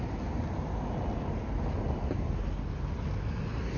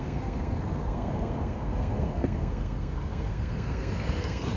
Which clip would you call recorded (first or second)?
first